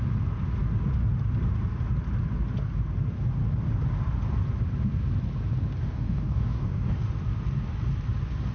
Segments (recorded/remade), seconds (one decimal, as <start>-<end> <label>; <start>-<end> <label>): 0.0-5.8 recorded; 5.8-6.9 remade; 6.9-8.5 recorded

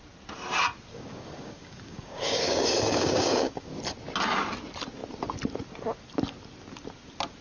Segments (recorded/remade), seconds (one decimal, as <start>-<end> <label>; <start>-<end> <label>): 0.0-0.9 recorded; 0.9-3.8 remade; 3.8-7.4 recorded